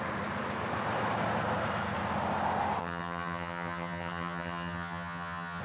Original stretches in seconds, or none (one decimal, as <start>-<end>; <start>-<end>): 0.0-2.8